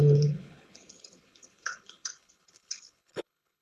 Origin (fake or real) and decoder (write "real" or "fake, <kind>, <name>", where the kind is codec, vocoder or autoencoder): fake, codec, HILCodec